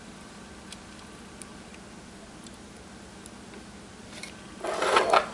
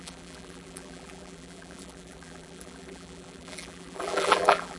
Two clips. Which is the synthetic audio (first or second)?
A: second